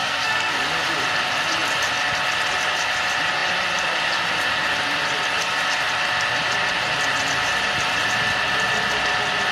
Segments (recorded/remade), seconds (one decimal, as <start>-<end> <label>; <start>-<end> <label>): 0.0-0.6 remade; 0.6-9.5 recorded